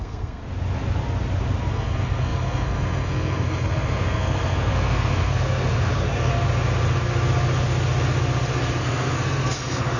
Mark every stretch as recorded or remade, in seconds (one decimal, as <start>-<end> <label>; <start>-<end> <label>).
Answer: 0.0-0.4 remade; 0.4-1.7 recorded; 1.7-6.3 remade; 6.3-8.8 recorded; 8.8-10.0 remade